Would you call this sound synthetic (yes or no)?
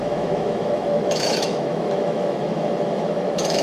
yes